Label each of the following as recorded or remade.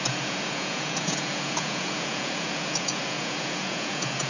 remade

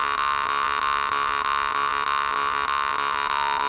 recorded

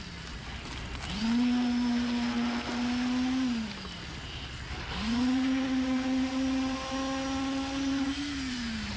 recorded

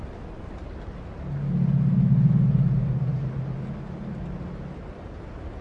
recorded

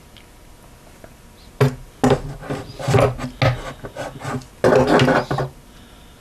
recorded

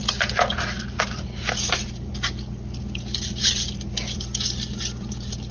recorded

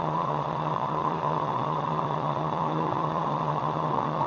remade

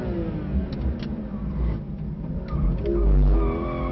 recorded